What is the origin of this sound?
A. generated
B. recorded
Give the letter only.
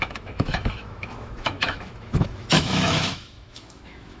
A